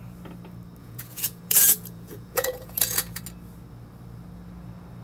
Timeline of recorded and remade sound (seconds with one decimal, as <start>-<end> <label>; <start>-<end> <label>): 0.0-0.8 recorded; 0.8-3.2 remade; 3.2-5.0 recorded